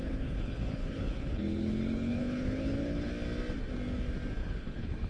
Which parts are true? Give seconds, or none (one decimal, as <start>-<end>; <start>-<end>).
3.1-4.4